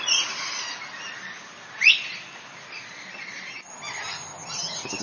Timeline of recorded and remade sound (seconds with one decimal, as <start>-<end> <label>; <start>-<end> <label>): 0.0-5.0 recorded